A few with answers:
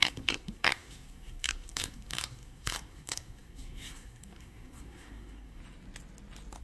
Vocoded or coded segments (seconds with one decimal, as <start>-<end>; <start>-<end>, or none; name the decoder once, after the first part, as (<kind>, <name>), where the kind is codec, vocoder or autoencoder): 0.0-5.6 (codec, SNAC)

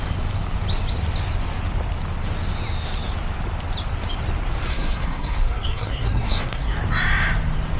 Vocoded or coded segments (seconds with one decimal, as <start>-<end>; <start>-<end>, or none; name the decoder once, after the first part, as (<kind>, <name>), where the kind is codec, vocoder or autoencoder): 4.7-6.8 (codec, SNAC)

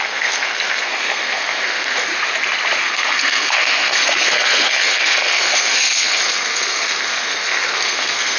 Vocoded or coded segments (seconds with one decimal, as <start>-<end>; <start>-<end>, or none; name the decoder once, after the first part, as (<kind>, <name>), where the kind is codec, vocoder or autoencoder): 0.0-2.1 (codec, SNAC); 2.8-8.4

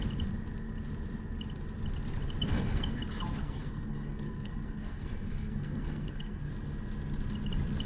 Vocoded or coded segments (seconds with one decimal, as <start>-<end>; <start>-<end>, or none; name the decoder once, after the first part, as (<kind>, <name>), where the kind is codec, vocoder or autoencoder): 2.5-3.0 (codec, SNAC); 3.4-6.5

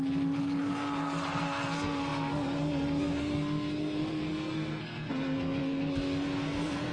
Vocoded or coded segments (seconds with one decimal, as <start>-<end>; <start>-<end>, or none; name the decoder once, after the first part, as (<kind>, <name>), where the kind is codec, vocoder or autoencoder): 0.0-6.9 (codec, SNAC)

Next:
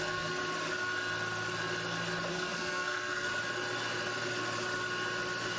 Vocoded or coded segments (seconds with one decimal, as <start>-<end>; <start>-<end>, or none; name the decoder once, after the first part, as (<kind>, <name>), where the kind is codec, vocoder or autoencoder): 0.0-0.4 (codec, SNAC); 2.3-3.3

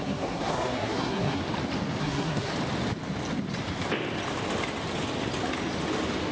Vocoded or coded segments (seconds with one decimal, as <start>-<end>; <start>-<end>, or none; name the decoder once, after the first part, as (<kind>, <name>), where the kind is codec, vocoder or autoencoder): 0.0-1.4 (codec, SNAC); 2.0-2.5

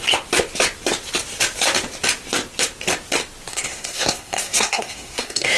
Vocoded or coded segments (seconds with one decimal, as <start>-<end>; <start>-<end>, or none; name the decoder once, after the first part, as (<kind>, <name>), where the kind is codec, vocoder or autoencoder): 3.5-5.6 (codec, SNAC)